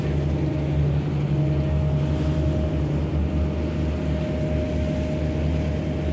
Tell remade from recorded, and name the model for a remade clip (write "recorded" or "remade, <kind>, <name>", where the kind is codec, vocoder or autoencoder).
recorded